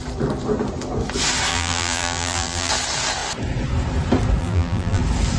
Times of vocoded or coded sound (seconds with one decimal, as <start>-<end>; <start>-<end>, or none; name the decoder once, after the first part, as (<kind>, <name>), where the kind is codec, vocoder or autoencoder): 1.5-2.7 (vocoder, BigVGAN v2); 4.4-5.0